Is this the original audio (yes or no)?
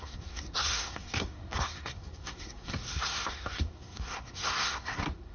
no